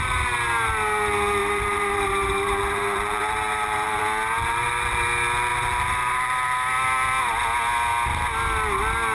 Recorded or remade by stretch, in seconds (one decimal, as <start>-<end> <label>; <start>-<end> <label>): 0.0-1.4 recorded; 1.4-4.0 remade; 4.0-4.4 recorded; 4.4-5.0 remade; 5.0-5.5 recorded; 5.5-6.7 remade; 6.7-9.1 recorded